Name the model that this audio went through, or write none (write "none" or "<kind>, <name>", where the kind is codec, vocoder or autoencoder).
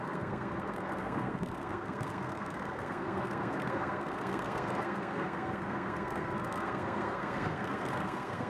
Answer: codec, SNAC